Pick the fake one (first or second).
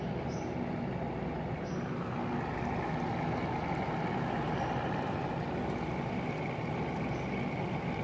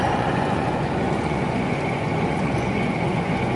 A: second